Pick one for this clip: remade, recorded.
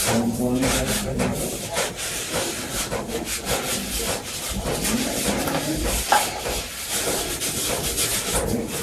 remade